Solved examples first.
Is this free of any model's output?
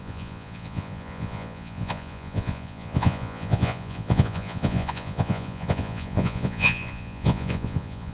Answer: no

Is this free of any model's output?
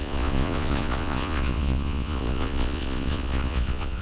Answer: no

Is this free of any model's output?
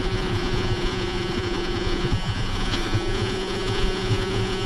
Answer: no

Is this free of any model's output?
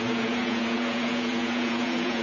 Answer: no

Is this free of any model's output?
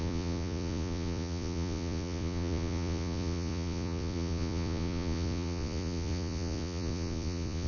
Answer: no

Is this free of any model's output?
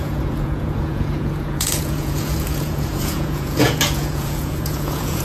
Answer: no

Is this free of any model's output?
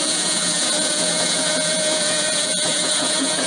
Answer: no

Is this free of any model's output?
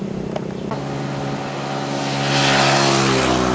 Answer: yes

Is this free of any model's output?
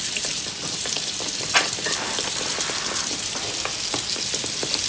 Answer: yes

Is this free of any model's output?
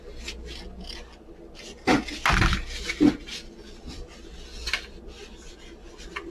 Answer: yes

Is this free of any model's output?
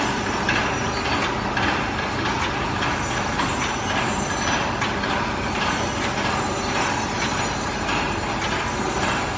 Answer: yes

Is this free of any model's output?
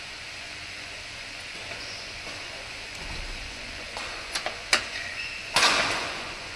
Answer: no